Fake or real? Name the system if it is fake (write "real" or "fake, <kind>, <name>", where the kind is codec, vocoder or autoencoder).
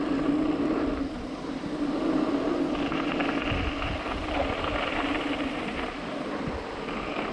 real